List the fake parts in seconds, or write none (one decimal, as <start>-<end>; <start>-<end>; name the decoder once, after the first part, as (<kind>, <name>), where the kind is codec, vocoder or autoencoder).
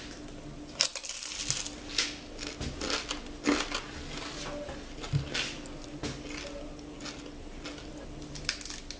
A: none